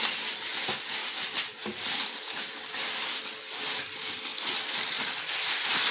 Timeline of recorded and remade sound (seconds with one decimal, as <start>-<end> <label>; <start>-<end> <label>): 0.0-1.0 recorded; 1.0-2.9 remade; 2.9-5.9 recorded